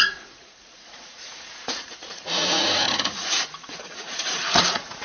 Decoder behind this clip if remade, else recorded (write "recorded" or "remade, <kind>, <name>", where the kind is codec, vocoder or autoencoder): remade, vocoder, Vocos